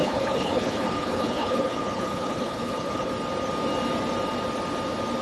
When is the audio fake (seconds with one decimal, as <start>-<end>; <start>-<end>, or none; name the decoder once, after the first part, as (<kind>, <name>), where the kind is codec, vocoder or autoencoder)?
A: 0.0-3.1 (codec, HILCodec)